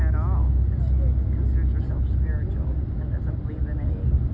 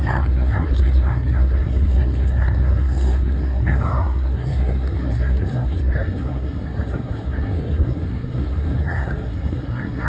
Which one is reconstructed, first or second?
second